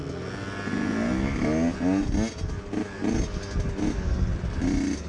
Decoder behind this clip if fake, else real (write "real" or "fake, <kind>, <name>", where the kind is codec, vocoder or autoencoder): real